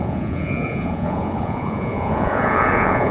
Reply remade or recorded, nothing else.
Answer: remade